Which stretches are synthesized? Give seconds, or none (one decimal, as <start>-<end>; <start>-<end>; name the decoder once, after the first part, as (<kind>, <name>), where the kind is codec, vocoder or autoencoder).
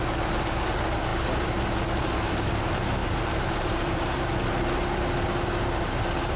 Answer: 3.0-4.3 (vocoder, BigVGAN v2)